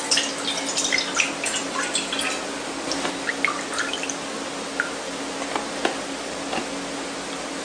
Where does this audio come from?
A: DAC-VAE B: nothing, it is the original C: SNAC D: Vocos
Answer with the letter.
B